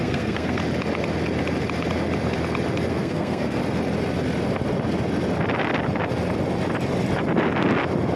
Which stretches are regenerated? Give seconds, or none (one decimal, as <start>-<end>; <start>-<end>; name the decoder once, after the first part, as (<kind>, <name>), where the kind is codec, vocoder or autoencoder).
0.0-0.6 (codec, SNAC); 2.9-3.6